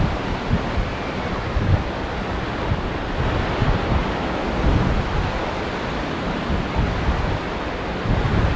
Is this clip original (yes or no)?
yes